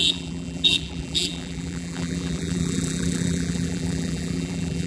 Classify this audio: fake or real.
fake